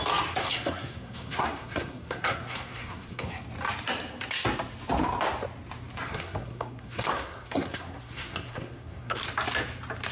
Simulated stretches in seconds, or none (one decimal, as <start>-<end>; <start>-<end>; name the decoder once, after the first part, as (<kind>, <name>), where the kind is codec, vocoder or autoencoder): 0.4-3.3 (codec, SNAC); 6.1-9.2